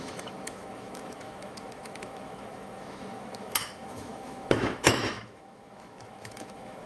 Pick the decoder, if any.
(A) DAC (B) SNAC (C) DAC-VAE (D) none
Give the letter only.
C